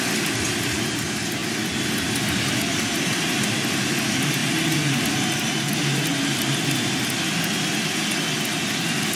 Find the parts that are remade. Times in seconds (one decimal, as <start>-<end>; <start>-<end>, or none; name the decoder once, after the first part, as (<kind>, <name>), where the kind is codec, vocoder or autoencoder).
none